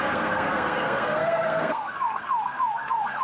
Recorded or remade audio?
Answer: remade